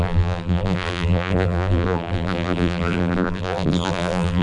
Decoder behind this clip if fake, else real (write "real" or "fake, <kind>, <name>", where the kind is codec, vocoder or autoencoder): fake, vocoder, BigVGAN v2